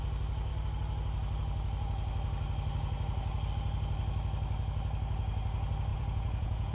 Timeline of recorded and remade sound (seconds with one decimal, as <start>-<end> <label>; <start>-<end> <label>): 0.0-5.9 recorded; 5.9-6.7 remade